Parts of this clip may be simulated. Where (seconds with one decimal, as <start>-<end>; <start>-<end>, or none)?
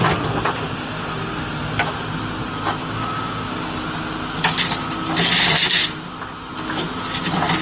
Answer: 2.8-3.8